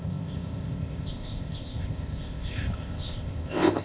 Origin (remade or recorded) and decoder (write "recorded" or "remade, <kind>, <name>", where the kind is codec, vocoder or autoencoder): remade, codec, ZipCodec